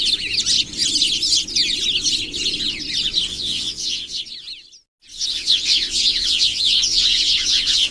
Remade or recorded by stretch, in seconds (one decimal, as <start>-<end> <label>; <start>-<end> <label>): 0.0-3.3 recorded; 3.3-4.2 remade; 4.2-5.1 recorded; 5.1-7.9 remade